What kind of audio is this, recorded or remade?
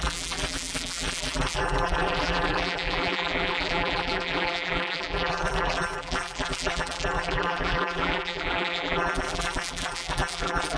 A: remade